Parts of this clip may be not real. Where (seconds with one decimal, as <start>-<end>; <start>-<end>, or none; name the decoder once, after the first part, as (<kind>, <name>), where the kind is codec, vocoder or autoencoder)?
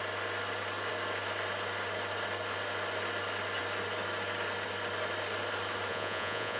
5.9-6.6 (vocoder, Vocos)